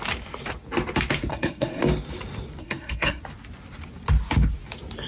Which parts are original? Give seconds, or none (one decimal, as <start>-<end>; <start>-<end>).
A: 0.0-1.3; 1.8-2.6; 3.2-5.1